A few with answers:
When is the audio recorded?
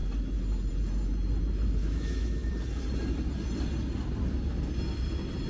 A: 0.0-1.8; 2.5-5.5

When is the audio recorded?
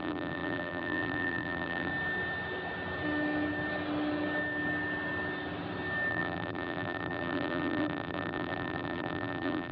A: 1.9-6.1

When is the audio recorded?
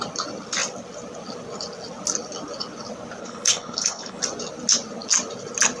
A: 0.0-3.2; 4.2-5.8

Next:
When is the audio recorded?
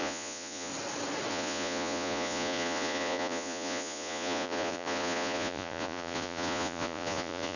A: 0.7-1.3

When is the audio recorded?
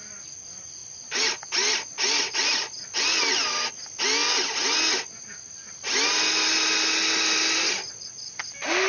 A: 0.0-8.9